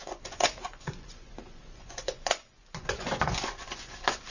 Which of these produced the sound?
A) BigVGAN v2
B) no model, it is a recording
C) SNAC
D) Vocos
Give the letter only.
D